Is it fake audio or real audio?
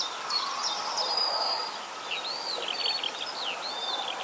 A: real